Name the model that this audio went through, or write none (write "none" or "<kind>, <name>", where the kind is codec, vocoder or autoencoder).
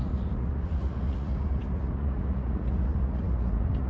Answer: vocoder, Vocos